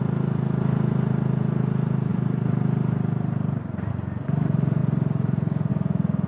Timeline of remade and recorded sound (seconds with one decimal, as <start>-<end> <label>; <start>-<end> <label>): 0.0-2.1 recorded; 2.1-3.9 remade; 3.9-6.3 recorded